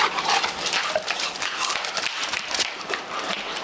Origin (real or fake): fake